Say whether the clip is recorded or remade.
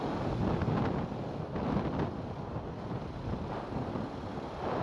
recorded